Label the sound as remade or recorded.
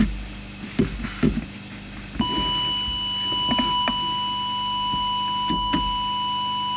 recorded